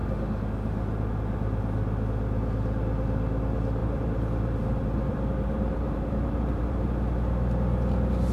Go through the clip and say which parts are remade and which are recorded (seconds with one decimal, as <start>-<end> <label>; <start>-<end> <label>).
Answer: 0.0-3.8 recorded; 3.8-6.9 remade; 6.9-8.3 recorded